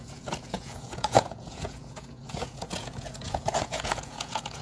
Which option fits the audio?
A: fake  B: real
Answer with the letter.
A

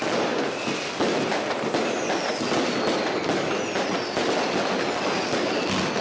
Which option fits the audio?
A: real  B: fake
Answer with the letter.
A